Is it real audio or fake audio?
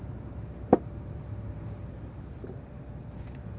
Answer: fake